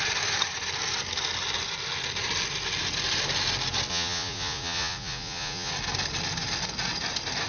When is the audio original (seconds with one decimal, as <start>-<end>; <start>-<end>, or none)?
0.0-3.9; 5.7-7.5